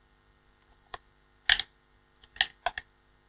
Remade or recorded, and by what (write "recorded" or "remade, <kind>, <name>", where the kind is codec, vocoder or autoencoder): recorded